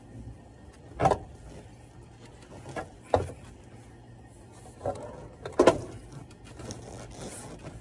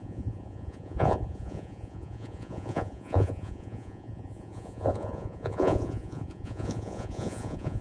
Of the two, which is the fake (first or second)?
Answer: second